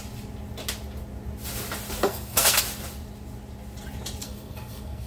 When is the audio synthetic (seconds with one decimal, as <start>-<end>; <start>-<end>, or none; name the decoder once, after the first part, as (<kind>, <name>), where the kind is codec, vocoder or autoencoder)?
2.0-2.6 (codec, SNAC); 4.2-5.1